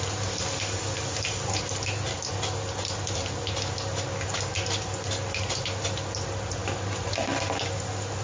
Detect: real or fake real